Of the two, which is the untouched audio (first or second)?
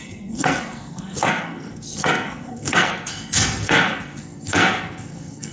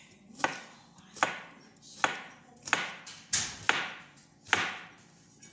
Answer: second